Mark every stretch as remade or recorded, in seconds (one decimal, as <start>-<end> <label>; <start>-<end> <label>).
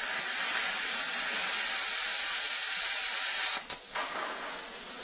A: 0.0-5.0 recorded